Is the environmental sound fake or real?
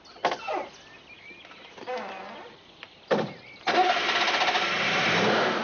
real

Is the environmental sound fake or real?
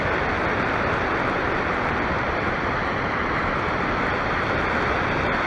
real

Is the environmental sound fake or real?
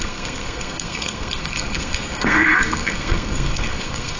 fake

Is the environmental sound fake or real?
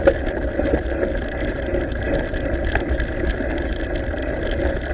real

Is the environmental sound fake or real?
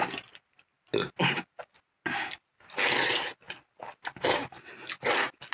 real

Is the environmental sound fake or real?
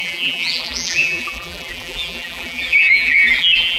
fake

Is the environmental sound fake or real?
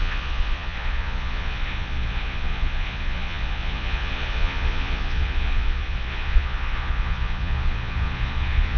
fake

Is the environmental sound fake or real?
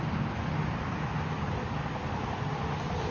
real